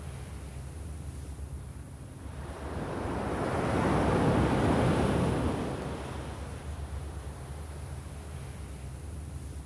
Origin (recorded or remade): recorded